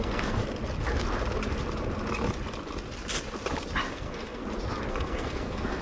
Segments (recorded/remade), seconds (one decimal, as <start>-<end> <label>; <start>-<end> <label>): 0.0-0.4 remade; 0.4-3.9 recorded; 3.9-4.4 remade; 4.4-4.9 recorded; 4.9-5.8 remade